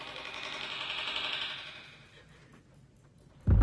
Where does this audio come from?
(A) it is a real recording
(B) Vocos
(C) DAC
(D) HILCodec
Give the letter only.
A